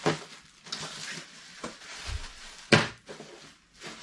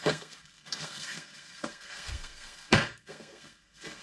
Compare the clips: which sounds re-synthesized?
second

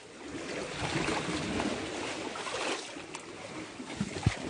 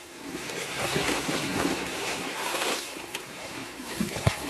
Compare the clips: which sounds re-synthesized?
second